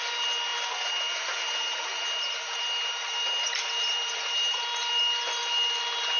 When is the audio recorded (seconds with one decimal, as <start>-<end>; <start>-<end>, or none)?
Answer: 0.0-6.2